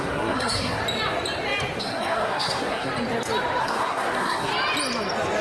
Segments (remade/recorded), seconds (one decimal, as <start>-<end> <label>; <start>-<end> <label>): 0.0-0.8 remade; 0.8-1.8 recorded; 1.8-2.9 remade; 2.9-3.6 recorded; 3.6-4.5 remade; 4.5-5.4 recorded